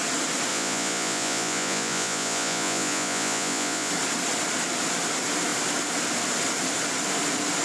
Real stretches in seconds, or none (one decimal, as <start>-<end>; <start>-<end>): 0.0-0.5; 3.9-7.6